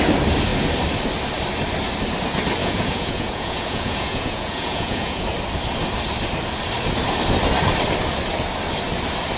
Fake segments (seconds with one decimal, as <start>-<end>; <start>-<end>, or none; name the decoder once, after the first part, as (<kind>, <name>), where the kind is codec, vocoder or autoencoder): 2.6-5.2 (vocoder, Vocos)